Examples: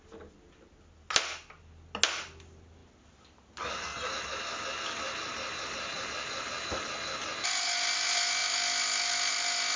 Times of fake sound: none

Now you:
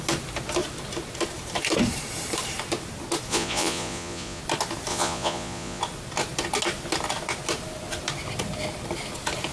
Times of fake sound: 3.3-4.4 (vocoder, Vocos); 4.9-5.8